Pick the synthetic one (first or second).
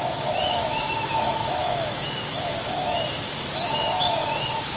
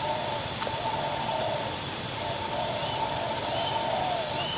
first